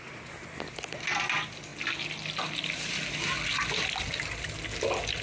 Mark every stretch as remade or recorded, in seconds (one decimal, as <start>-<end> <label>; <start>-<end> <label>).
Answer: 0.0-5.2 recorded